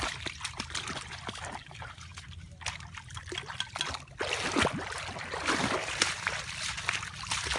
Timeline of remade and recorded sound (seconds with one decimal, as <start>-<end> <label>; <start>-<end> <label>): 0.0-7.6 recorded